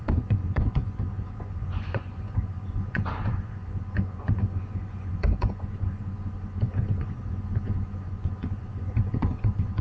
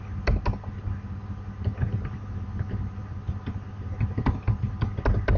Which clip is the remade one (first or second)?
first